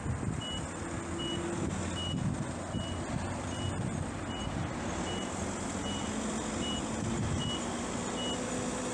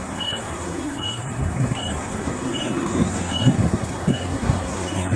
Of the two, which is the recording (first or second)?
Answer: first